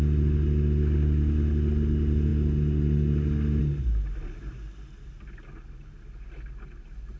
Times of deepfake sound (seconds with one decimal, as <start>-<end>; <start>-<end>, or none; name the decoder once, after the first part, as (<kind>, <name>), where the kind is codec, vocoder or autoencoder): none

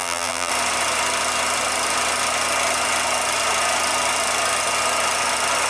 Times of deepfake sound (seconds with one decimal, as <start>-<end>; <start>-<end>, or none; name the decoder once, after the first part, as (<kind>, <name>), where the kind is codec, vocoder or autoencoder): 0.0-0.5 (vocoder, BigVGAN v2)

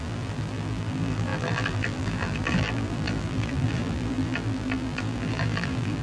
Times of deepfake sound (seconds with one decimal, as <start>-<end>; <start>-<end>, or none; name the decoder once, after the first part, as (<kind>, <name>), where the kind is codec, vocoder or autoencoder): 0.0-6.0 (vocoder, BigVGAN v2)

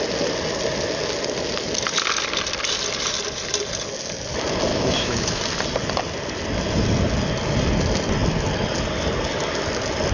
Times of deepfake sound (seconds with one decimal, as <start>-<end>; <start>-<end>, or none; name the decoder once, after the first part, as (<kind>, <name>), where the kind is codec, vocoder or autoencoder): 4.7-5.4 (autoencoder, DAC-VAE)

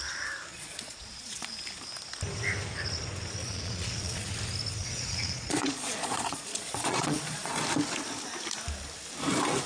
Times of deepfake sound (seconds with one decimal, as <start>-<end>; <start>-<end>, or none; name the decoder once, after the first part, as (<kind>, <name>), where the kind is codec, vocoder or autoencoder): 0.5-1.5 (vocoder, Vocos); 3.4-4.3; 4.8-7.6